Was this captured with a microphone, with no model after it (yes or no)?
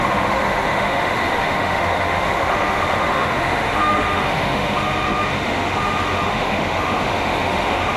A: no